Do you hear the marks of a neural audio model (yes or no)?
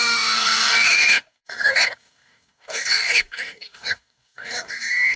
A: yes